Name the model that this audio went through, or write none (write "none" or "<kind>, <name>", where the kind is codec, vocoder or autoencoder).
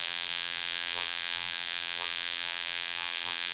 vocoder, BigVGAN v2